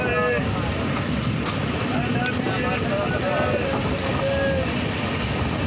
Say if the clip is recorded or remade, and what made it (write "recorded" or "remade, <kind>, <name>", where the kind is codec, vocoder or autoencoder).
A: recorded